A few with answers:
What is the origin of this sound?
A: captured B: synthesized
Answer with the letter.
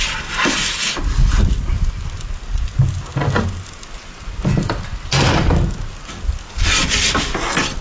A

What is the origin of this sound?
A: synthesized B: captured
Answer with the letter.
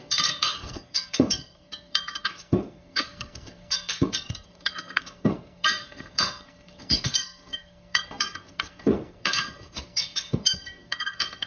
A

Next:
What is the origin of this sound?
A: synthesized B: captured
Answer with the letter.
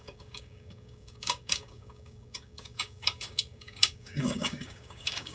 A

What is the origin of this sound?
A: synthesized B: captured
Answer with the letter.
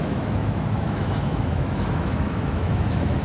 A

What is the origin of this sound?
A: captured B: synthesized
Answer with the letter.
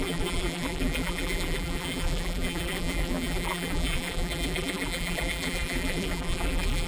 B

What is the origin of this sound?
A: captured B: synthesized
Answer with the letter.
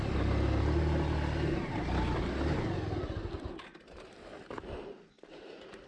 A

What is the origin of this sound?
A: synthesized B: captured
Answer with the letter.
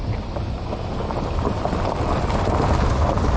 B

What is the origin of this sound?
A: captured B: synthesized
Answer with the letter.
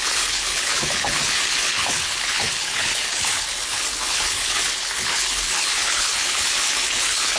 B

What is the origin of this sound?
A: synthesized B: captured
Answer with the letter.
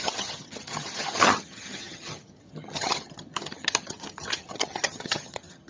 A